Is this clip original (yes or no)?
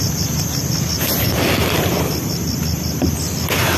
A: yes